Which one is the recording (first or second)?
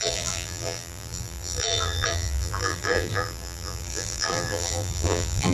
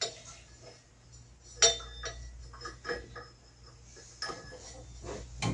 second